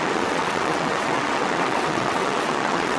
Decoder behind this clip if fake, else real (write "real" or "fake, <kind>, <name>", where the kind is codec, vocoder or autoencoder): fake, vocoder, WaveNeXt